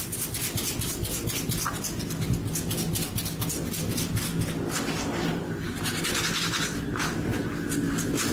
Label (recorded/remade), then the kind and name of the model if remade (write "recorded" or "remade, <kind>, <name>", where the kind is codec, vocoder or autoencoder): recorded